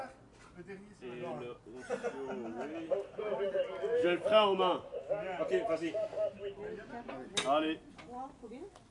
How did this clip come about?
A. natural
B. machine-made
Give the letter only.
A